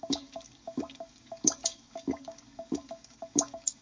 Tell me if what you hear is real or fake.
fake